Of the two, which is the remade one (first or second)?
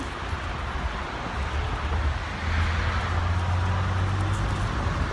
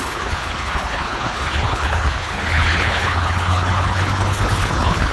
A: second